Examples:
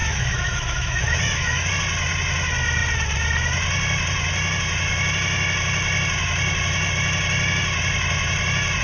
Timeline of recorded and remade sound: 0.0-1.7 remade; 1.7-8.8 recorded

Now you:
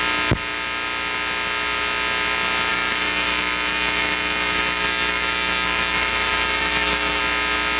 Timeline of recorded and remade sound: 0.0-2.7 recorded; 2.7-7.2 remade; 7.2-7.8 recorded

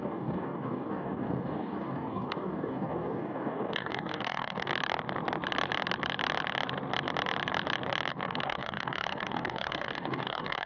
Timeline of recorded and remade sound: 0.0-4.7 remade; 4.7-8.1 recorded; 8.1-10.7 remade

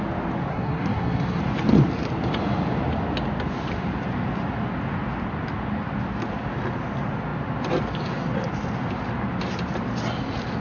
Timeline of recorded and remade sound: 0.0-0.5 recorded; 0.5-1.4 remade; 1.4-10.6 recorded

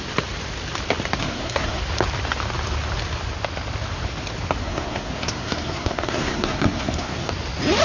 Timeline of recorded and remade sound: 0.0-1.2 recorded; 1.2-1.8 remade; 1.8-4.6 recorded; 4.6-7.3 remade; 7.3-7.8 recorded

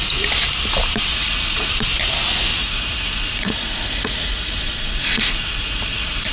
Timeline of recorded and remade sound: 0.0-1.1 recorded; 1.1-1.7 remade; 1.7-2.6 recorded; 2.6-6.3 remade